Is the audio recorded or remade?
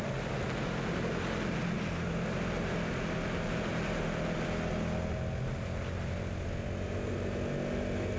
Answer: recorded